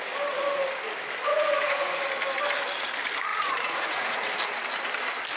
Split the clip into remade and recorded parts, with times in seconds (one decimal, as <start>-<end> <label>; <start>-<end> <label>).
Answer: 0.0-1.3 recorded; 1.3-2.0 remade; 2.0-3.3 recorded; 3.3-4.3 remade; 4.3-5.4 recorded